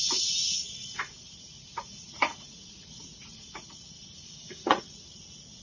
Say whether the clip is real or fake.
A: fake